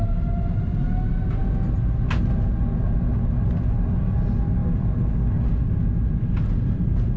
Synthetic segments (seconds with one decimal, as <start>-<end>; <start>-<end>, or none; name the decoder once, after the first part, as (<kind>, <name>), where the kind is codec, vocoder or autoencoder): none